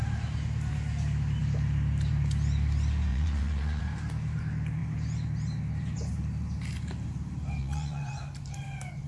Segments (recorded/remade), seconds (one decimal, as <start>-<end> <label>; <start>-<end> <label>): 0.0-3.1 recorded; 3.1-3.8 remade; 3.8-7.6 recorded; 7.6-8.2 remade; 8.2-9.1 recorded